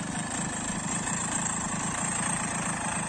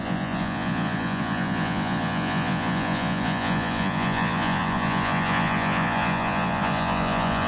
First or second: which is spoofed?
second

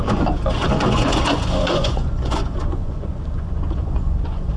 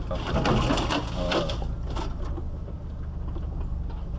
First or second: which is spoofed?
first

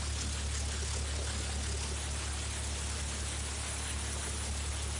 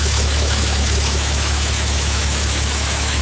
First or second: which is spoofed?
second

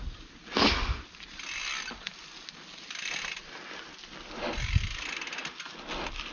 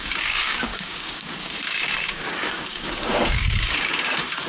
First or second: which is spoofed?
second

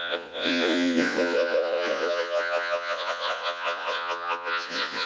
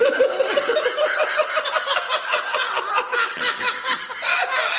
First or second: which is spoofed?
first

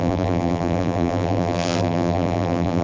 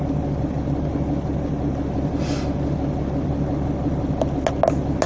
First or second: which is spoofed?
first